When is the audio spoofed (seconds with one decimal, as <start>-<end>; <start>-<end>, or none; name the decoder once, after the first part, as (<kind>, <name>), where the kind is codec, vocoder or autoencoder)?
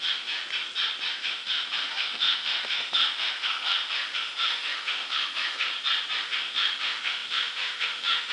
0.0-0.4 (autoencoder, DAC-VAE); 1.1-5.7; 6.2-8.3